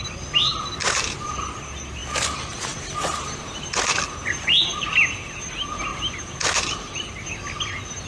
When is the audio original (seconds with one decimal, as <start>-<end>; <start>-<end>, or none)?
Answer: 0.0-0.8; 1.4-5.9; 7.1-8.1